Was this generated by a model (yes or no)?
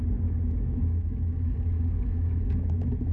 yes